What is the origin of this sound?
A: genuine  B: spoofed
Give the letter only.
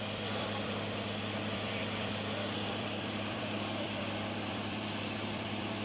B